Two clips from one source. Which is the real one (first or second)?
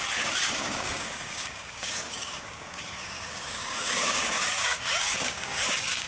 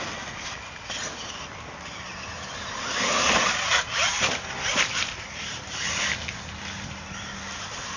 second